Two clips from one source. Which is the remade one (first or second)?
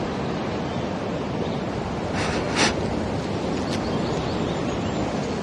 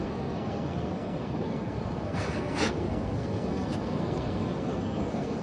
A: second